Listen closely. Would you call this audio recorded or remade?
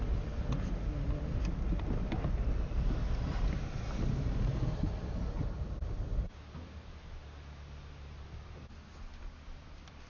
recorded